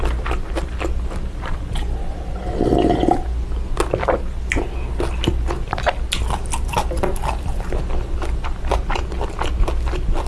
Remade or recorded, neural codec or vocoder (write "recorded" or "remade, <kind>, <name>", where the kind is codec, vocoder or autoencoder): recorded